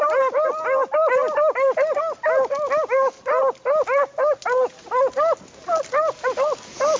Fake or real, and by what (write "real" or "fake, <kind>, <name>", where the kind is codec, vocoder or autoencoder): real